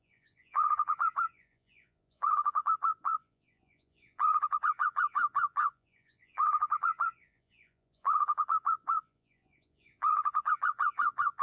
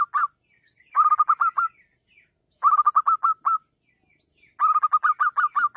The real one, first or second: second